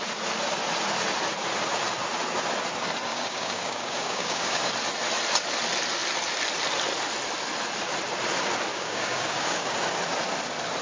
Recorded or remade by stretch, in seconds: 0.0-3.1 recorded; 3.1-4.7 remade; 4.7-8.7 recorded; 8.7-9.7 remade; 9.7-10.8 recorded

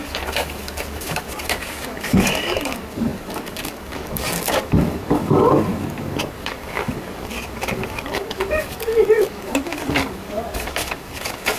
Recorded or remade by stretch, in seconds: 0.0-11.6 remade

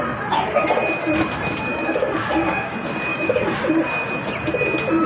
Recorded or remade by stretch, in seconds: 0.0-1.7 recorded; 1.7-2.7 remade; 2.7-3.1 recorded; 3.1-3.7 remade; 3.7-5.1 recorded

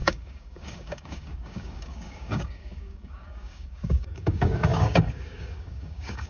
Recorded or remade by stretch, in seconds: 0.0-6.3 remade

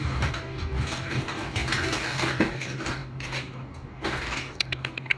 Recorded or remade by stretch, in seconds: 0.0-5.2 remade